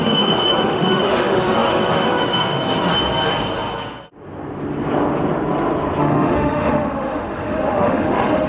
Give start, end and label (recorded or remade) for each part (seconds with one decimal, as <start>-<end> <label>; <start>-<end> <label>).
0.0-2.9 remade; 2.9-6.0 recorded; 6.0-8.5 remade